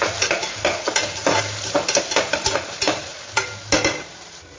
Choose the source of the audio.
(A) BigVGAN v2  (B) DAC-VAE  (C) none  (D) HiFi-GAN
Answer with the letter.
C